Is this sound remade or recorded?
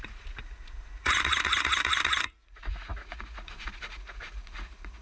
remade